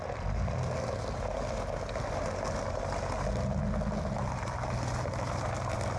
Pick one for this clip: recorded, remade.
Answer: recorded